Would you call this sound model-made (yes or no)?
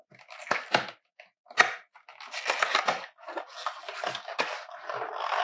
no